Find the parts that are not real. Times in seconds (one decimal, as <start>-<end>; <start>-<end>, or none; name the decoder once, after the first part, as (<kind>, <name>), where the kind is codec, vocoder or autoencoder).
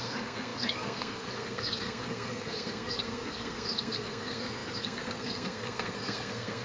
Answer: 0.0-6.6 (codec, SNAC)